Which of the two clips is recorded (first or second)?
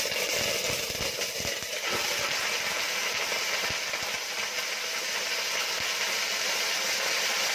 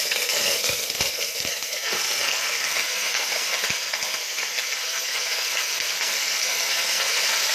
first